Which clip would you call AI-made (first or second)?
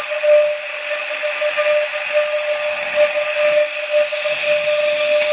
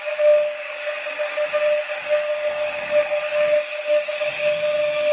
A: second